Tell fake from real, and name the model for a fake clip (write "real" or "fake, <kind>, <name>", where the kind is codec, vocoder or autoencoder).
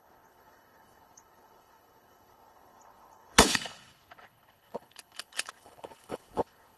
fake, codec, HILCodec